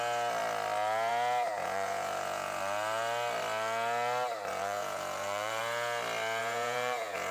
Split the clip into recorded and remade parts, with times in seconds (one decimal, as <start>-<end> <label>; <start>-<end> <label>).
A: 0.0-1.6 recorded; 1.6-2.6 remade; 2.6-4.5 recorded; 4.5-5.6 remade; 5.6-6.4 recorded; 6.4-7.3 remade